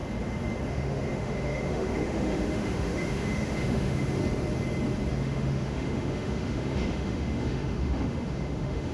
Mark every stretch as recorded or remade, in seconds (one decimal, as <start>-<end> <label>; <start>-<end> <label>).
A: 0.0-0.7 recorded; 0.7-4.2 remade; 4.2-5.1 recorded; 5.1-8.9 remade